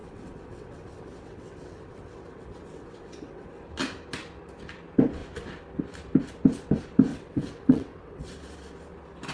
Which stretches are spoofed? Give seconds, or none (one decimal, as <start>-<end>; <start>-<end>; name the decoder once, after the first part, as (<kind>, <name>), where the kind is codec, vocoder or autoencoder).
0.0-3.5 (vocoder, WaveNeXt); 7.1-8.3

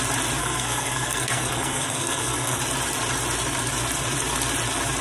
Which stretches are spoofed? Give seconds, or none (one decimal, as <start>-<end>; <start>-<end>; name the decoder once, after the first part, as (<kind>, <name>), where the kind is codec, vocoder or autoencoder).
0.4-2.6 (codec, SNAC)

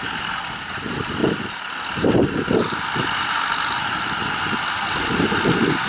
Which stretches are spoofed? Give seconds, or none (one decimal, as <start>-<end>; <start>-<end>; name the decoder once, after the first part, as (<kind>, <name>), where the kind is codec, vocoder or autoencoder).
none

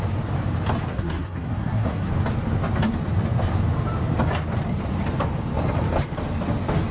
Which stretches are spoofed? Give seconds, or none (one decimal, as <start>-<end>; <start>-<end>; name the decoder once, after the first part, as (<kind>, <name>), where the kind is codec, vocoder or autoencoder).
0.9-2.1 (codec, SNAC)

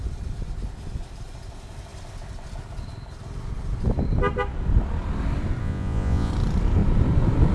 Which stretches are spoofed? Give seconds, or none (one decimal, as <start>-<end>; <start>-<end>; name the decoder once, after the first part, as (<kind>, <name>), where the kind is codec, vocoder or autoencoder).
5.6-6.3 (vocoder, Vocos)

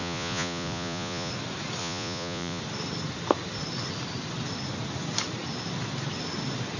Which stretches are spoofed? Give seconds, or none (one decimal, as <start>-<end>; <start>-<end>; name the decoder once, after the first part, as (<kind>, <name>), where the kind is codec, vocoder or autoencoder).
0.0-1.3 (vocoder, Vocos); 1.8-2.6

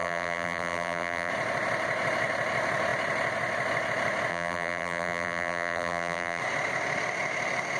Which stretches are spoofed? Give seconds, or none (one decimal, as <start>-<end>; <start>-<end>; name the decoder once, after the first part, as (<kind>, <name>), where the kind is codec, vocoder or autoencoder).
0.0-1.3 (vocoder, BigVGAN v2); 4.3-6.4